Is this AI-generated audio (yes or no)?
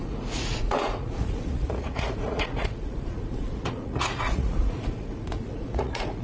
yes